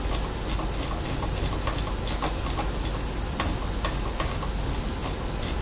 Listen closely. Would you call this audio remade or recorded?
recorded